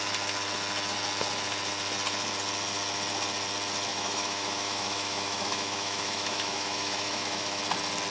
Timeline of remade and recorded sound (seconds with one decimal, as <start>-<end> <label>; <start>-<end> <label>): 0.0-3.9 recorded; 3.9-7.6 remade; 7.6-8.1 recorded